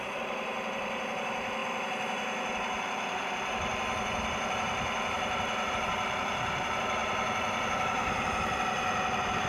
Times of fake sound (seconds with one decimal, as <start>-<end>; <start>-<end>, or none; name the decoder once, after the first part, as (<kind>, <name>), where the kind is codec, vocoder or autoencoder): 0.0-9.5 (vocoder, BigVGAN v2)